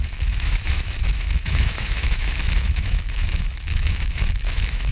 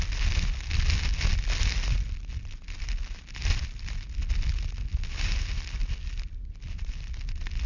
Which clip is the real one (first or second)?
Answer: second